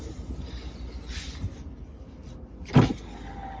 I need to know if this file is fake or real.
real